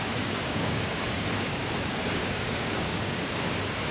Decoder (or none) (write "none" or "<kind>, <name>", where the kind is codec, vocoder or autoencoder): codec, DAC